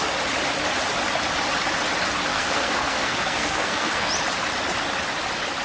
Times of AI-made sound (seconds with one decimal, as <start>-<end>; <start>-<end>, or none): 2.3-4.1